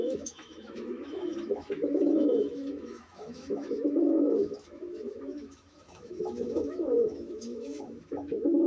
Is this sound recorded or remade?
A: remade